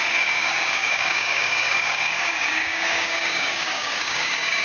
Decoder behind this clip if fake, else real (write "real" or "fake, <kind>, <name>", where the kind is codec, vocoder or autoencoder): fake, codec, DAC